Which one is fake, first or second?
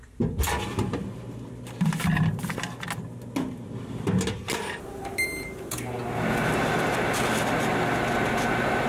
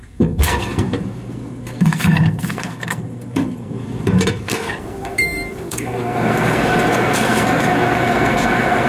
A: second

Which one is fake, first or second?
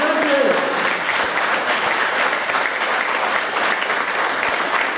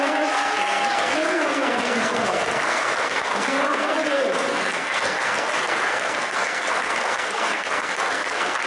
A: second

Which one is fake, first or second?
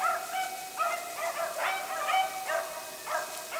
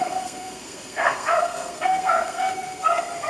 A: second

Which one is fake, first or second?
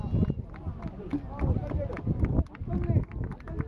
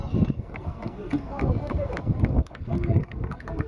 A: second